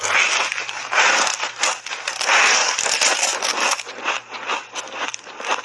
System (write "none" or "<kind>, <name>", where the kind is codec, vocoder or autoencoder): none